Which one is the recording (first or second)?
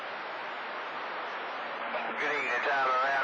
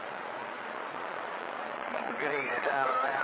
first